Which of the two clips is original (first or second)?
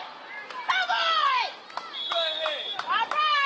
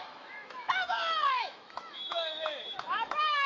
first